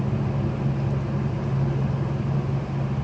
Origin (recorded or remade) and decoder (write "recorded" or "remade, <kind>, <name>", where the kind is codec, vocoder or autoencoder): recorded